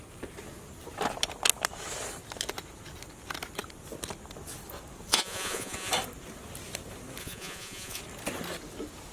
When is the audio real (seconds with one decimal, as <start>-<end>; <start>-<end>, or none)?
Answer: 0.0-5.1; 5.9-7.2; 8.0-9.1